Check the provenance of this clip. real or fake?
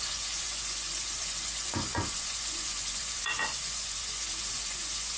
fake